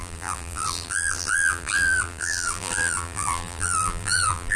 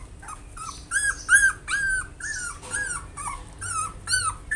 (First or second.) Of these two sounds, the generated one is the first